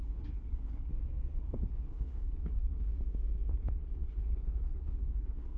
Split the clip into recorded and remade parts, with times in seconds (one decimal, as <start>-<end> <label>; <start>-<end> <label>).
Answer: 0.0-0.9 remade; 0.9-1.4 recorded; 1.4-2.9 remade; 2.9-3.5 recorded; 3.5-5.6 remade

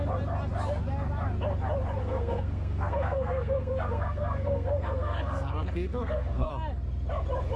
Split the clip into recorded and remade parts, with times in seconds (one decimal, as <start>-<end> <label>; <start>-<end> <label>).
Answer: 0.0-2.0 recorded; 2.0-6.5 remade; 6.5-7.6 recorded

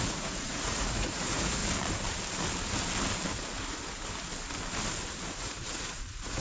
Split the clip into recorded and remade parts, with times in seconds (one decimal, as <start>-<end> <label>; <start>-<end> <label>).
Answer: 0.0-1.6 remade; 1.6-5.4 recorded; 5.4-6.4 remade

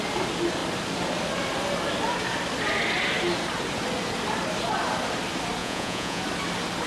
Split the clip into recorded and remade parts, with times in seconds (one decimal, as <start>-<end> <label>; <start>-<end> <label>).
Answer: 0.0-5.6 recorded; 5.6-6.2 remade; 6.2-6.9 recorded

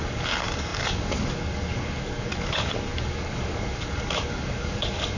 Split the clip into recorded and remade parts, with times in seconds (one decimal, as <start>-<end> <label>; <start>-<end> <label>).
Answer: 0.0-5.2 remade